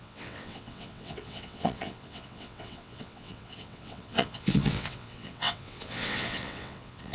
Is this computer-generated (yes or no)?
yes